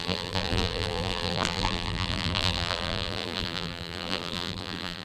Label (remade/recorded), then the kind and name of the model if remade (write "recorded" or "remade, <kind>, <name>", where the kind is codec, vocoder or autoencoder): remade, vocoder, BigVGAN v2